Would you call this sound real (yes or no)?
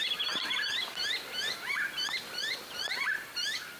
yes